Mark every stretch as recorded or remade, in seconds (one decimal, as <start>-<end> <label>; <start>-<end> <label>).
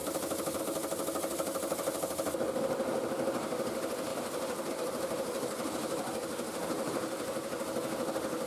0.0-0.6 remade; 0.6-8.5 recorded